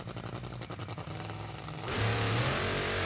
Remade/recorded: recorded